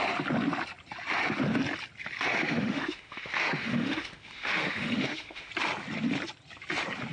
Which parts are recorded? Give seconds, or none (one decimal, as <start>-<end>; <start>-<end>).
0.0-2.4; 5.5-7.1